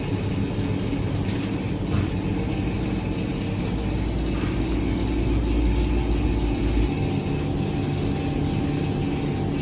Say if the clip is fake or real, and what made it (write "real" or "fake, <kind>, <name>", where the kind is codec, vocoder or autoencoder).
real